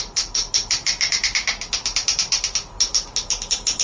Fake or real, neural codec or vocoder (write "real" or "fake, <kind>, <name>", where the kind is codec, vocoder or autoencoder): real